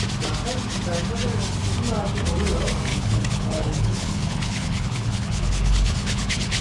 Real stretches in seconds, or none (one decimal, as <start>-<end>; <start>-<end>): 0.0-2.9